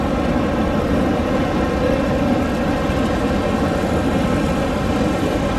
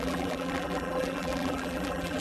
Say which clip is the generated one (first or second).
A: second